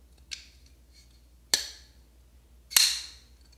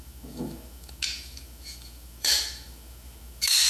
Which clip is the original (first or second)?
first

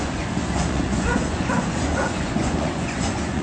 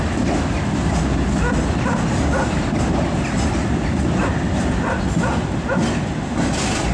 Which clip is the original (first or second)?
second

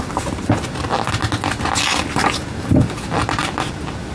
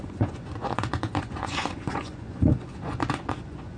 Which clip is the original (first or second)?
first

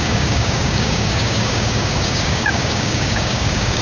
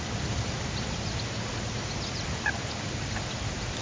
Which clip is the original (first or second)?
second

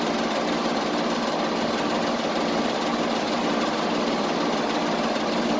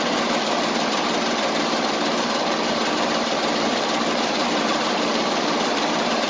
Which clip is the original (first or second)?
first